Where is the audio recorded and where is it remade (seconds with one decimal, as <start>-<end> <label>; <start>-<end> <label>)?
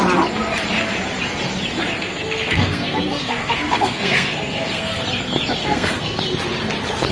0.0-2.0 recorded; 2.0-5.0 remade; 5.0-5.6 recorded; 5.6-6.2 remade; 6.2-7.1 recorded